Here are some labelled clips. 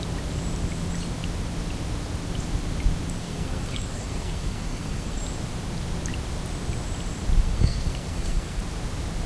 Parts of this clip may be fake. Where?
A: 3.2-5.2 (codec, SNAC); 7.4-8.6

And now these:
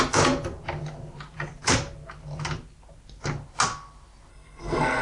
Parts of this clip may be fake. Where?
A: 4.3-5.0 (codec, SNAC)